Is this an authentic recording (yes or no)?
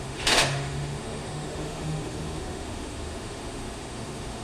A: no